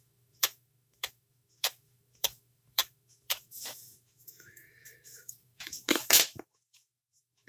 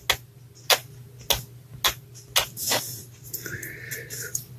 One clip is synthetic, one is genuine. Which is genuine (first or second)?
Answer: second